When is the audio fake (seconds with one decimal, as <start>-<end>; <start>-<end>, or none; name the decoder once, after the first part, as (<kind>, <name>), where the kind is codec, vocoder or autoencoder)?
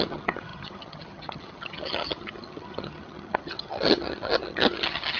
0.0-5.2 (vocoder, HiFi-GAN)